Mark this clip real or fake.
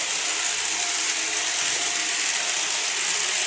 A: real